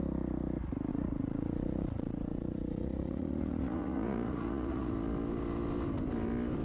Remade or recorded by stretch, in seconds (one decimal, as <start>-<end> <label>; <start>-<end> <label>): 0.0-0.9 recorded; 0.9-4.9 remade; 4.9-6.6 recorded